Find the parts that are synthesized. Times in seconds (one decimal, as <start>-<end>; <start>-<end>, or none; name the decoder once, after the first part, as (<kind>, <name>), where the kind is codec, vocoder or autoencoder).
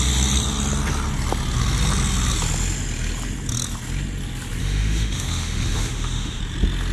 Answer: 4.6-6.4 (autoencoder, DAC-VAE)